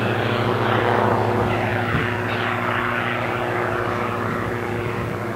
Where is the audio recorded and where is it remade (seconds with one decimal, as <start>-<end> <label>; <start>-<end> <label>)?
0.0-5.4 remade